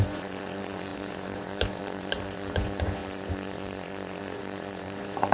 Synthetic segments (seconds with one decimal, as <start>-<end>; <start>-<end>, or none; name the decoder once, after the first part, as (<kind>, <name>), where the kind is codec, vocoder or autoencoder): 0.0-5.3 (vocoder, Vocos)